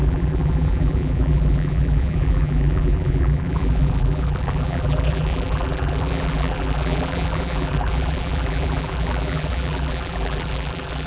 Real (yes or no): no